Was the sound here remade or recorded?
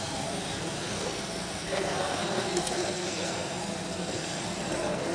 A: remade